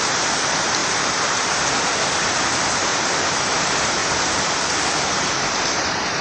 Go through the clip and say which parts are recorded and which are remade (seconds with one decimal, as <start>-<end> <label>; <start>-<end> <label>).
0.0-6.2 remade

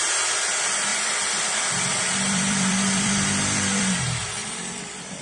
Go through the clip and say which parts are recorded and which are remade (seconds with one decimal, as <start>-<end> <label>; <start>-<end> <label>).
0.0-0.9 recorded; 0.9-4.0 remade; 4.0-4.4 recorded; 4.4-5.2 remade